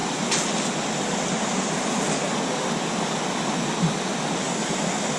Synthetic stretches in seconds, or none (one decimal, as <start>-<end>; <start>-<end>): none